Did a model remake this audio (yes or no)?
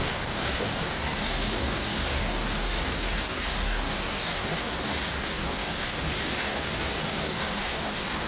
yes